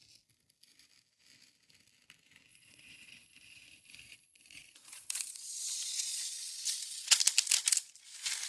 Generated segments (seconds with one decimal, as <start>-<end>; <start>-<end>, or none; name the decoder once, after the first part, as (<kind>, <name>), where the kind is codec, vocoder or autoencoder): 2.5-7.2 (vocoder, Vocos)